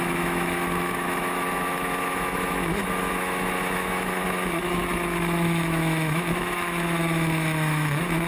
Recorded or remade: remade